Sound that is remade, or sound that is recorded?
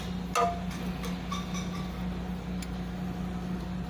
recorded